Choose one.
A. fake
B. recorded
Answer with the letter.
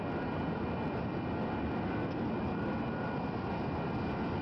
B